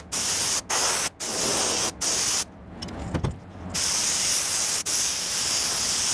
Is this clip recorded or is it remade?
recorded